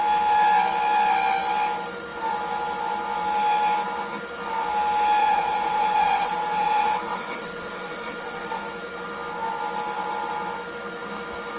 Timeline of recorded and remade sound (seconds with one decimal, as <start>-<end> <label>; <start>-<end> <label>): 0.0-5.2 recorded; 5.2-8.6 remade; 8.6-11.6 recorded